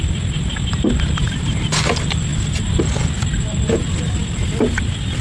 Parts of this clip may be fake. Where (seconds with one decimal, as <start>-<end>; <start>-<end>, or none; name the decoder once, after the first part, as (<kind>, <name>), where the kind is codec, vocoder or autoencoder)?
none